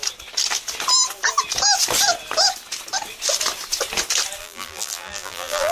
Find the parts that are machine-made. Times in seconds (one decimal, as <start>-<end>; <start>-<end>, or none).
4.4-5.7